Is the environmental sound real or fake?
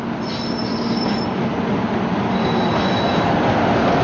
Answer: real